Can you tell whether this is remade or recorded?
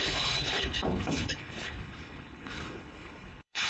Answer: remade